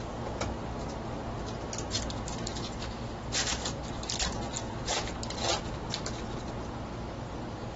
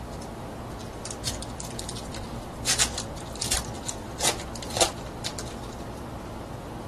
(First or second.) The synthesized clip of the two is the second